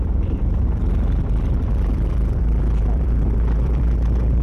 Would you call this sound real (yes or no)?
no